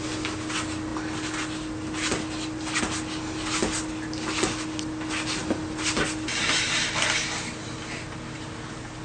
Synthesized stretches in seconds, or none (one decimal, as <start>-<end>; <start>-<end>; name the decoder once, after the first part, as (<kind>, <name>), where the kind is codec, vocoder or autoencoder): none